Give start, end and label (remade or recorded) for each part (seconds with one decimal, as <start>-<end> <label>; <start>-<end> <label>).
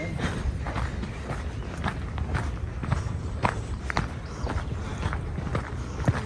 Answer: 0.0-2.8 recorded; 2.8-3.8 remade; 3.8-6.3 recorded